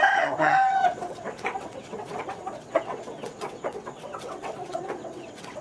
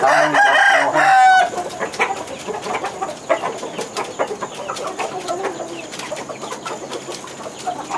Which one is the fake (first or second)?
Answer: first